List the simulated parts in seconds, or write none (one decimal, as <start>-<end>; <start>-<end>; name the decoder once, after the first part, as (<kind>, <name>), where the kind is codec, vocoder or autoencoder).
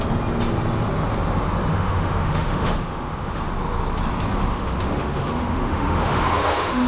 1.7-3.5 (autoencoder, DAC-VAE); 4.5-6.9